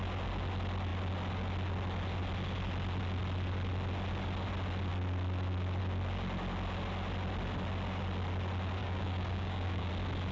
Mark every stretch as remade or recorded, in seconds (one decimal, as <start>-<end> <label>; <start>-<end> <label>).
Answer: 0.0-8.8 recorded; 8.8-9.9 remade; 9.9-10.3 recorded